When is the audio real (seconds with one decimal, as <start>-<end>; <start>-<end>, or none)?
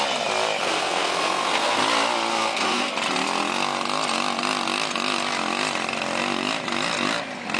0.0-0.6; 1.8-2.3; 2.9-7.6